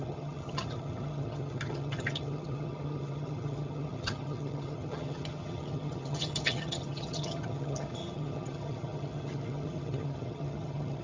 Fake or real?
fake